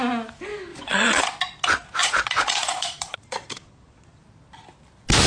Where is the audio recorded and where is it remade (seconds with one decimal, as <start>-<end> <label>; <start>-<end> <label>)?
0.0-0.7 recorded; 0.7-1.3 remade; 1.3-2.0 recorded; 2.0-4.2 remade; 4.2-5.3 recorded